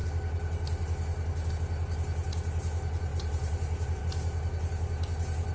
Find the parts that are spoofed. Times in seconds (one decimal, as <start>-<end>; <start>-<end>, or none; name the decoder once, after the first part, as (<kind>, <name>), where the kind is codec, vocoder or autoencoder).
3.1-4.0 (vocoder, BigVGAN v2)